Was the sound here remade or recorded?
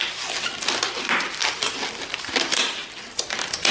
recorded